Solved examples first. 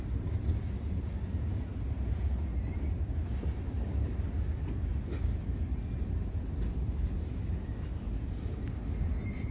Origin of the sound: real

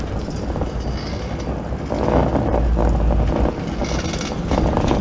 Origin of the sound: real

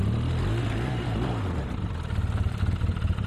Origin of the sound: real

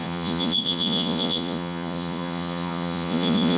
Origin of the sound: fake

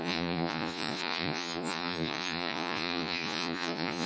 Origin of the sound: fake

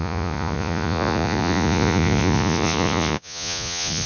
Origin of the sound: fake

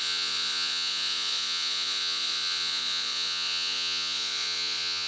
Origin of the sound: fake